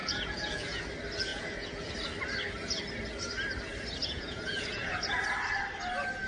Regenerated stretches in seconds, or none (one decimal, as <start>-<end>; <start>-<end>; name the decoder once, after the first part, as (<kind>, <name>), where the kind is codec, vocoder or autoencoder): 0.0-0.8 (vocoder, Vocos); 1.3-1.9; 4.0-5.2